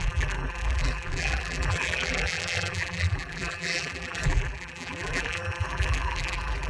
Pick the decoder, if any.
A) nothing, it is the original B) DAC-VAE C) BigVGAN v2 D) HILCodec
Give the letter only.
C